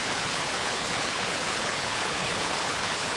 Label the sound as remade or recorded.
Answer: remade